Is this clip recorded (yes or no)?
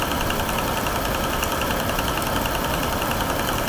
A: yes